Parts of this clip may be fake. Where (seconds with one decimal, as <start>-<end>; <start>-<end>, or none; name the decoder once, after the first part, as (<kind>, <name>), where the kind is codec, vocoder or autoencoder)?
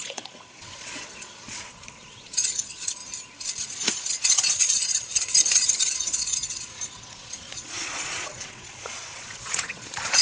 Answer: 0.0-3.0 (vocoder, Vocos); 3.6-10.2